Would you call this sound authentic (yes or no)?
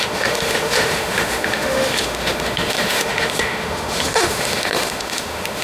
no